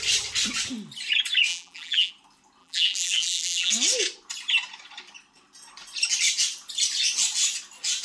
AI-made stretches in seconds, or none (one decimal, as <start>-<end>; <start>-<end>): 1.5-2.1; 2.6-3.7